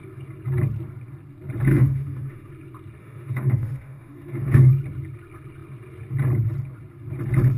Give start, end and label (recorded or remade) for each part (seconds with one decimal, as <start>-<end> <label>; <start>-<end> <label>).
0.0-1.7 recorded; 1.7-2.5 remade; 2.5-3.0 recorded; 3.0-4.7 remade; 4.7-7.6 recorded